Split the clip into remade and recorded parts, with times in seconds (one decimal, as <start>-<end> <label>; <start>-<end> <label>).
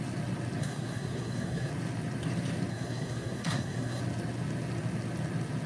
0.0-0.6 recorded; 0.6-1.7 remade; 1.7-2.7 recorded; 2.7-4.0 remade; 4.0-5.7 recorded